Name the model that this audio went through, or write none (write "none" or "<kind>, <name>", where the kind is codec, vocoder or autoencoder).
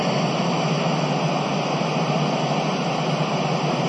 none